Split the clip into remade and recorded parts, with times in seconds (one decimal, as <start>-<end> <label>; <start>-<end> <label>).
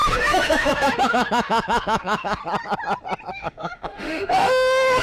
0.0-2.4 remade; 2.4-3.3 recorded; 3.3-5.0 remade